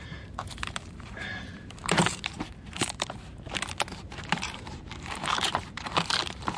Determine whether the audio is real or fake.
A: fake